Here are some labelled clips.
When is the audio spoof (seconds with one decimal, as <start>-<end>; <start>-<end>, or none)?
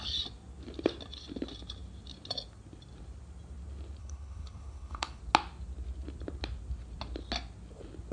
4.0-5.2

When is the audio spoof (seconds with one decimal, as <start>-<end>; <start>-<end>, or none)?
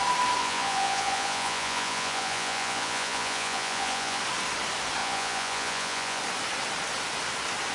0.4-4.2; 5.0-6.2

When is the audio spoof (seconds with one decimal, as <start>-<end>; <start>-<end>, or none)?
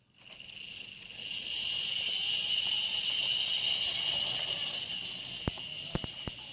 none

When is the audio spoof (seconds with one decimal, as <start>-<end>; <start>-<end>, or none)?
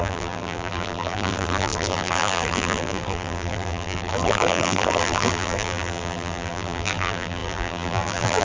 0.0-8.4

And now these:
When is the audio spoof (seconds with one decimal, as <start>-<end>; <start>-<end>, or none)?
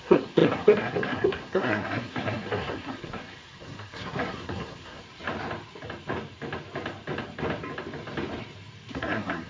0.0-5.0; 8.9-9.5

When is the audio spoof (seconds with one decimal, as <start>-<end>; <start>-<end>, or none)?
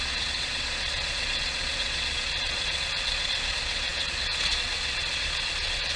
0.0-6.0